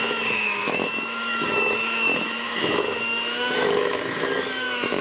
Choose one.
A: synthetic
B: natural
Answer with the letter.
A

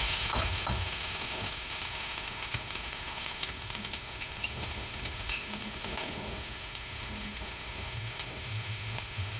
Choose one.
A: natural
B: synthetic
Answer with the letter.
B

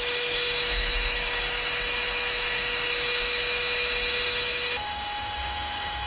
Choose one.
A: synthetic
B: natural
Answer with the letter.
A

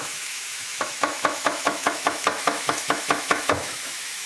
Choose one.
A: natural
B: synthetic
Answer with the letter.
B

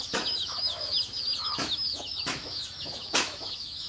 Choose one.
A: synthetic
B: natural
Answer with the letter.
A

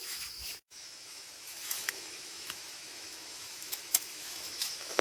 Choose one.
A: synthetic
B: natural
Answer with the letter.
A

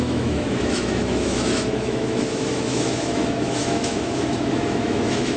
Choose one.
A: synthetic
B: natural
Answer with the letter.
A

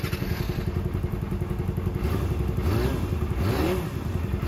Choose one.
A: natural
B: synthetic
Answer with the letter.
A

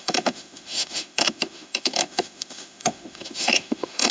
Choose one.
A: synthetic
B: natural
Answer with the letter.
A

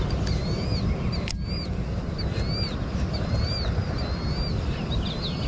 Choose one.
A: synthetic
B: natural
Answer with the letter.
B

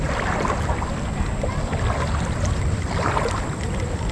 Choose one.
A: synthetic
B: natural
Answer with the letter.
B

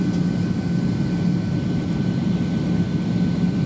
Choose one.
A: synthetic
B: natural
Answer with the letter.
B